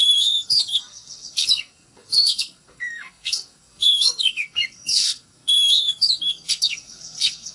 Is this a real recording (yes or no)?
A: no